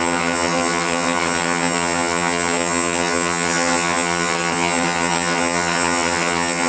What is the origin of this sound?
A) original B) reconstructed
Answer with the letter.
B